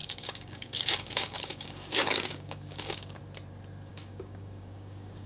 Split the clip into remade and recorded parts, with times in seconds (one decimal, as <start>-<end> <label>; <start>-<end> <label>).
0.0-3.2 remade; 3.2-3.9 recorded; 3.9-5.3 remade